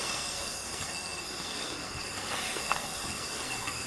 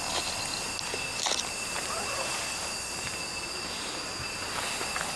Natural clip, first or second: second